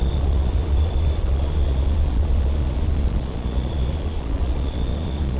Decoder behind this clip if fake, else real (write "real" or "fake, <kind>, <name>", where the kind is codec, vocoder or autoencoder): fake, vocoder, Vocos